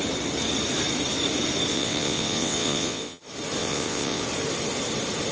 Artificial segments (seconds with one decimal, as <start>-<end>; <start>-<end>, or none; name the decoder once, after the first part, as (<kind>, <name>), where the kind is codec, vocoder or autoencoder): 1.7-3.2 (vocoder, WaveNeXt); 3.6-4.2